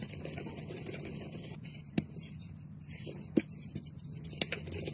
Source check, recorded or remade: recorded